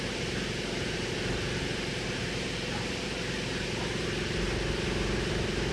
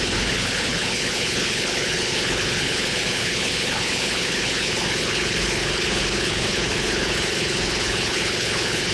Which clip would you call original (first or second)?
first